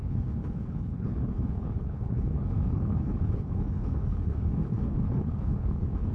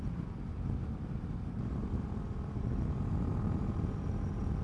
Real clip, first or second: second